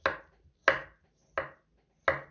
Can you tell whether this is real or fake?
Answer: real